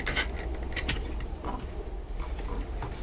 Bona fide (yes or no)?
yes